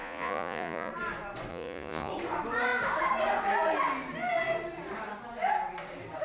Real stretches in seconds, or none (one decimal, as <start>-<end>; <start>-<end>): 0.9-1.5; 2.1-6.2